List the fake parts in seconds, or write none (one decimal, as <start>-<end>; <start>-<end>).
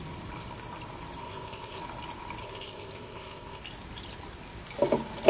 1.2-1.8; 2.4-3.6